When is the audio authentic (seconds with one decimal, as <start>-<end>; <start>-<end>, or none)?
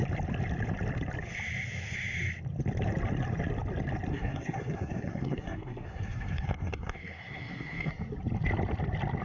0.0-4.1; 7.9-9.2